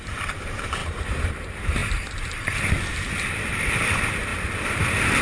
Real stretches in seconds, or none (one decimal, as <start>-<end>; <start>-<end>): none